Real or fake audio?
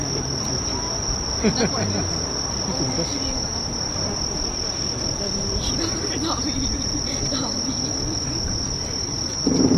real